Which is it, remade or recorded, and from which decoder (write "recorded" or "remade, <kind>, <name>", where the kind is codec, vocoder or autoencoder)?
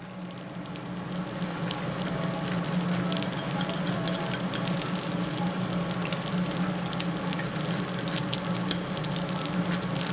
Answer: recorded